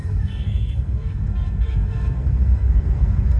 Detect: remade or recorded remade